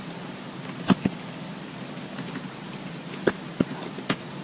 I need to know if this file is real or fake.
real